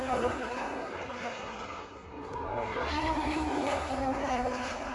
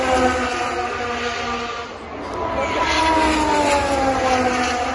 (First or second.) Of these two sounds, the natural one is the second